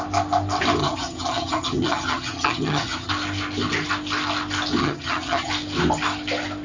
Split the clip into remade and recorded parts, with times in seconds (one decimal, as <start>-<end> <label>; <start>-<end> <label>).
0.0-0.8 recorded; 0.8-3.1 remade; 3.1-4.8 recorded; 4.8-5.5 remade; 5.5-6.6 recorded